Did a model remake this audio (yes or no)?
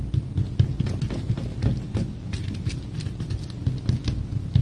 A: no